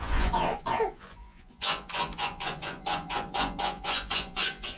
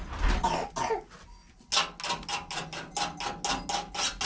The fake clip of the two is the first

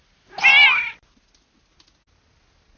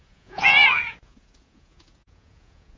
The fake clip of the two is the second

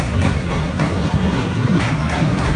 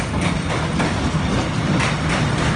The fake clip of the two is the first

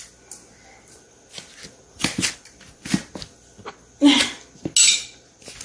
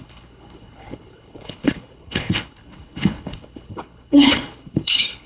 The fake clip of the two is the second